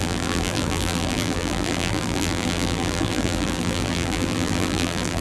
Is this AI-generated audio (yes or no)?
yes